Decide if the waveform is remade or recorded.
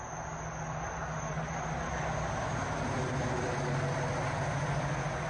recorded